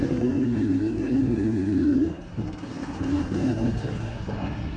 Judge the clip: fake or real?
fake